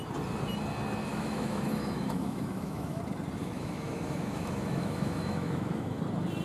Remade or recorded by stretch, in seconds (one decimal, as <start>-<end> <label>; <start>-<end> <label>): 0.0-1.1 recorded; 1.1-3.0 remade; 3.0-3.4 recorded; 3.4-6.0 remade; 6.0-6.4 recorded